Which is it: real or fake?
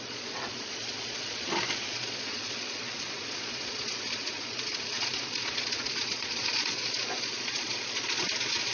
fake